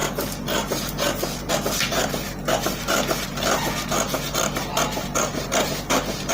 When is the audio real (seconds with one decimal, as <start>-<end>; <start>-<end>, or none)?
0.0-6.3